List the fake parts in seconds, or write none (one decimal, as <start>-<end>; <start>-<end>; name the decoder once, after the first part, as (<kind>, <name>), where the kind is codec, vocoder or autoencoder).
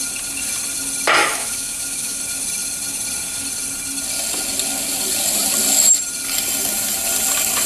1.2-2.2 (autoencoder, DAC-VAE)